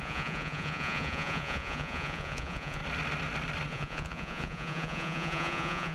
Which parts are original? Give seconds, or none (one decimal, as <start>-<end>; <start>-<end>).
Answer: 2.8-3.7